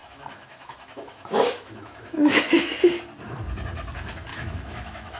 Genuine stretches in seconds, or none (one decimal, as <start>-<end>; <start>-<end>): 2.8-4.3